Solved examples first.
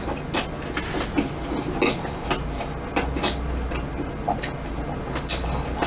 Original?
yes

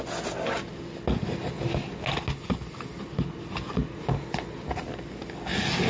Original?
yes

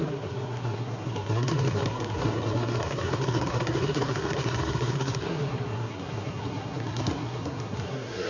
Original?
no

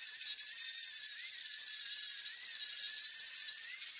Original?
yes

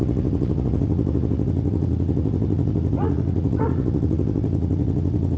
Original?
no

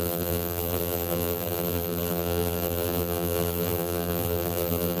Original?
no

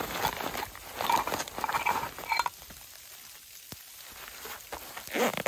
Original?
yes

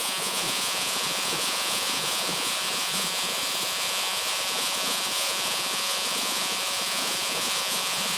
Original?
no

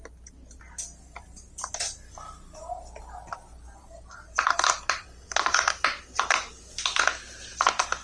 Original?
yes